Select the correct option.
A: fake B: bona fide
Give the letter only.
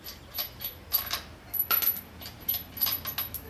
B